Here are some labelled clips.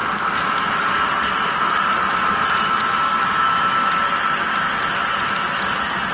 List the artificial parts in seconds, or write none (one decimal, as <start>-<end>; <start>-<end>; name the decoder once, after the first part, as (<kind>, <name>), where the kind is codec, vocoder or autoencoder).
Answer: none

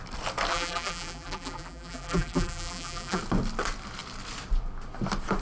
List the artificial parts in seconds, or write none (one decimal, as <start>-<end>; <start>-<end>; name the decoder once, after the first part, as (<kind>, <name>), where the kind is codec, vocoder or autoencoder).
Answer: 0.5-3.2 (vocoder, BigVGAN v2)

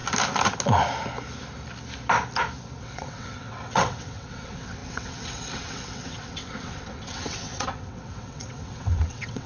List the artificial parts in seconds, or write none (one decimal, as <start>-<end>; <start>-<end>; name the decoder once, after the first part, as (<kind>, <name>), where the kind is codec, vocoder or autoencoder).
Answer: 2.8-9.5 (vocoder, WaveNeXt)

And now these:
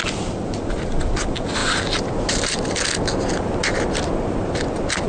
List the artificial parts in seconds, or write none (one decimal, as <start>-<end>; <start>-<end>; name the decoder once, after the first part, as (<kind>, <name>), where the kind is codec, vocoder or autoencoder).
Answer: none

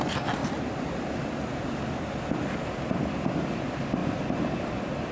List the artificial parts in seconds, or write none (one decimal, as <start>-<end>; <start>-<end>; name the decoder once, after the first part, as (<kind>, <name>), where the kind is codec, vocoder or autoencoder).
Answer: none